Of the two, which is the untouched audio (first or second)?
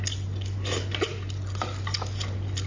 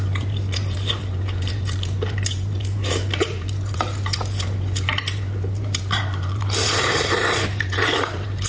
first